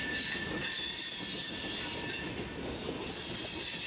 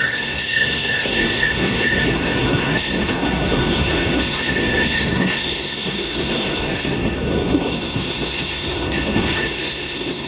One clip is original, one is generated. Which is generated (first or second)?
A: second